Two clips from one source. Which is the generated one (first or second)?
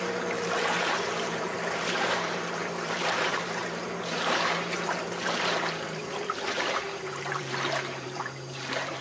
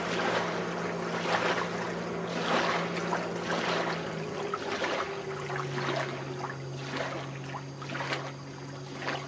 first